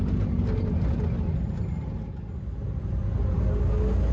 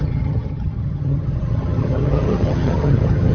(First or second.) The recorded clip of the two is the first